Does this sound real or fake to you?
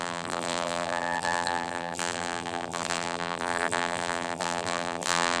fake